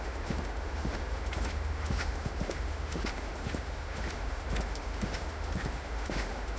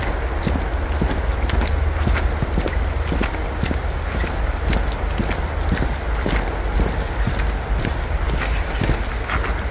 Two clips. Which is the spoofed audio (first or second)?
first